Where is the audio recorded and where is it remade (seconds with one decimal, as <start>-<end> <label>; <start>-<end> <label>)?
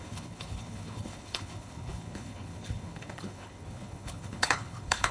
0.0-5.1 remade